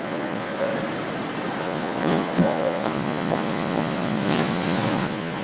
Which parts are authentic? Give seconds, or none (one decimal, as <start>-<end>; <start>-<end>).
0.7-1.6